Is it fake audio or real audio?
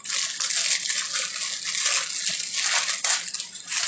real